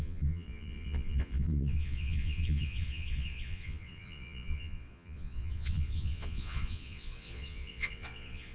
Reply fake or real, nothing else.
fake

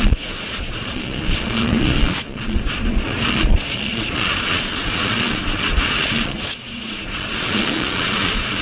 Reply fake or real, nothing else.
fake